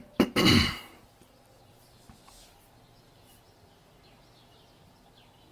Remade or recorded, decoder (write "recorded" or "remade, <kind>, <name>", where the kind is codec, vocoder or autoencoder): recorded